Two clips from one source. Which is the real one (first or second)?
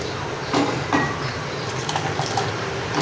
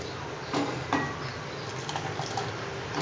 second